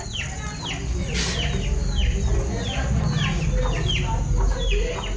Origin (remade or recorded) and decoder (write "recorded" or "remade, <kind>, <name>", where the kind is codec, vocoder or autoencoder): recorded